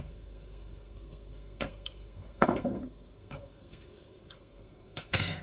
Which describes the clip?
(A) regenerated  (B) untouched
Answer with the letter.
A